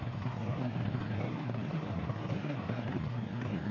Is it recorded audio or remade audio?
remade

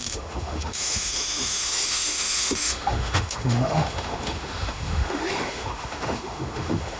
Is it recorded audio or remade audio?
remade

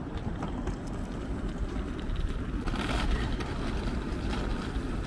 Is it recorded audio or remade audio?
recorded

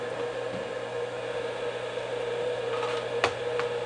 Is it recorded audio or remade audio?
recorded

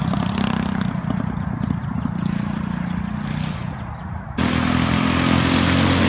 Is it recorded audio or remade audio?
recorded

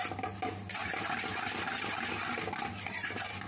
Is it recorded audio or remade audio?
recorded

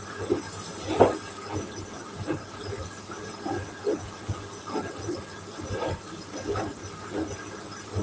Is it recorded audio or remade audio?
recorded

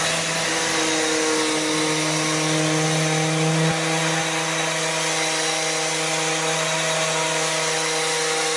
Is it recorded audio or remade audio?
recorded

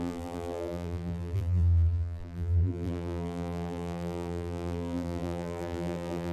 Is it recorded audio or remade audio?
remade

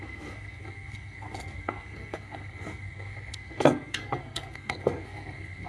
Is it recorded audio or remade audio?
remade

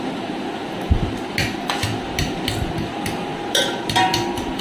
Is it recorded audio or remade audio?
recorded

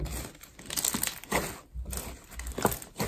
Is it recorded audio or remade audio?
recorded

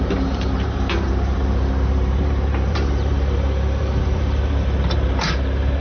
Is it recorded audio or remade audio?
remade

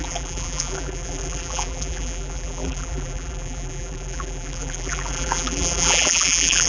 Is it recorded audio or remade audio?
remade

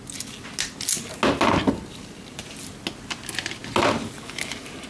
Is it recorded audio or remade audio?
recorded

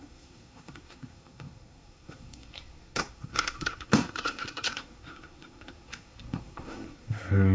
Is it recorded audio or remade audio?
remade